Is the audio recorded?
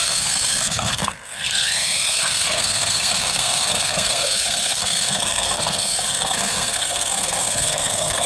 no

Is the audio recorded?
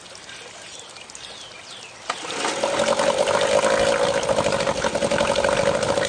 yes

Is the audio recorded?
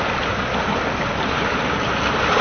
yes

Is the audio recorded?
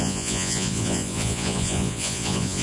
no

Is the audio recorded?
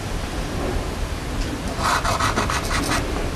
yes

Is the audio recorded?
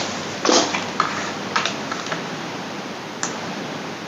yes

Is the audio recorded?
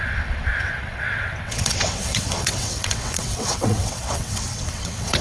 no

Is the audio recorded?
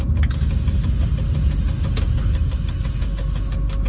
yes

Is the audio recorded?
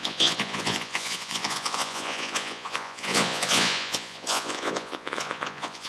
no